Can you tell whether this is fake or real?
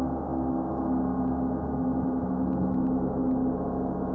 real